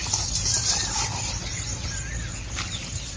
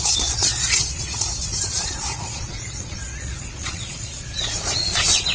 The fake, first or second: second